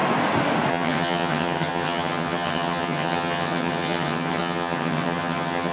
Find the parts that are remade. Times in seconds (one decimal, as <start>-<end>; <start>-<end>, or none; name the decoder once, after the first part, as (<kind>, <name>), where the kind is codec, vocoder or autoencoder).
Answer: 0.7-5.7 (vocoder, HiFi-GAN)

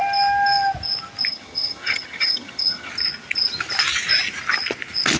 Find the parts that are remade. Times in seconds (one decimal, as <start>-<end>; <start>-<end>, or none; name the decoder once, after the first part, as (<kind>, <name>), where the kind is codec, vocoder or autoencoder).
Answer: 1.3-2.9 (vocoder, HiFi-GAN)

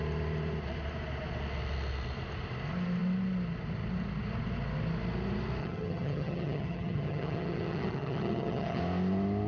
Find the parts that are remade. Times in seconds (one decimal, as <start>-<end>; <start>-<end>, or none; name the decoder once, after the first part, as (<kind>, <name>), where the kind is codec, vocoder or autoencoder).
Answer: 5.6-8.8 (vocoder, HiFi-GAN)

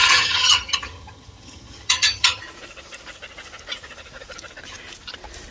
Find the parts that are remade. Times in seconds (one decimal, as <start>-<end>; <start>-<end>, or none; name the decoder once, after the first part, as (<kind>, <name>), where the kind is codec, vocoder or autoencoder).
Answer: 0.0-2.4 (vocoder, HiFi-GAN)

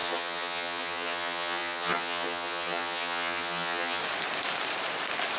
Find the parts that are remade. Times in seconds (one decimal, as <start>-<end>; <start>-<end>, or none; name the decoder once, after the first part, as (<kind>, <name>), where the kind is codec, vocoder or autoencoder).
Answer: 0.0-4.0 (vocoder, HiFi-GAN)

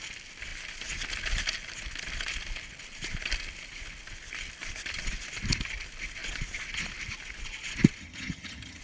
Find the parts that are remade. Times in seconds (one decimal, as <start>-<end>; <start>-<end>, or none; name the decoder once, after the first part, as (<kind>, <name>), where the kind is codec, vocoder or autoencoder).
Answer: 8.0-8.8 (vocoder, HiFi-GAN)

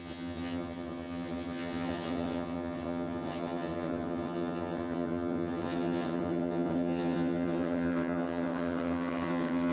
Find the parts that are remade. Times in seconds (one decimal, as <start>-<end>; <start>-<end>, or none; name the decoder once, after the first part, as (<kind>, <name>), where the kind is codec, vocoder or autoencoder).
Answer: 0.0-9.7 (vocoder, HiFi-GAN)